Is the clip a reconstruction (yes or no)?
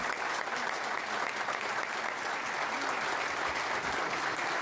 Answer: no